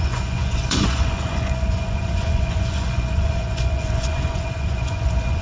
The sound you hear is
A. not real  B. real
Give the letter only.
A